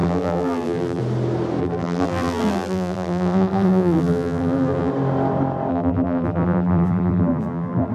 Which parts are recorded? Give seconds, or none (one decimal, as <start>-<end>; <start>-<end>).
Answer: 1.0-1.6; 4.9-5.7